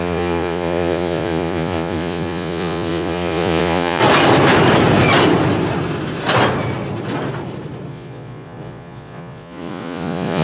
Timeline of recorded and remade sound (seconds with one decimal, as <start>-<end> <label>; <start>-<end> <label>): 0.0-4.0 remade; 4.0-7.9 recorded; 7.9-10.4 remade